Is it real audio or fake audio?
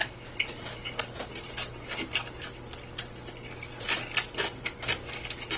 real